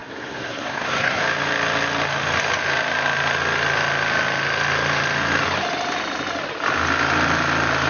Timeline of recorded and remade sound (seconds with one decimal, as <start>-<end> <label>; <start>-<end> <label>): 0.0-1.2 remade; 1.2-7.9 recorded

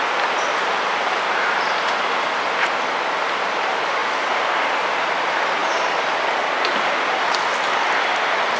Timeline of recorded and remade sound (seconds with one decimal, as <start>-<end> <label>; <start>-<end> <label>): 0.0-8.6 recorded